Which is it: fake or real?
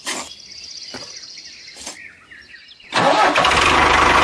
real